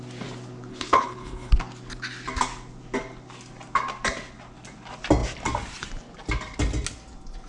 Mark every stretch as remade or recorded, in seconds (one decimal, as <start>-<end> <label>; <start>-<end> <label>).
0.0-0.7 recorded; 0.7-1.5 remade; 1.5-7.5 recorded